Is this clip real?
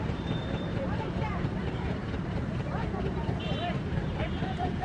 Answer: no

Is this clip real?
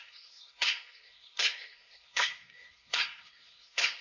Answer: no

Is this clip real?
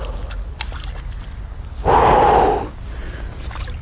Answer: yes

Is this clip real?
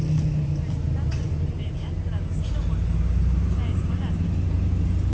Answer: yes